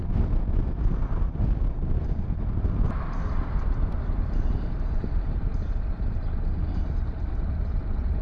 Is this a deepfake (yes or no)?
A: no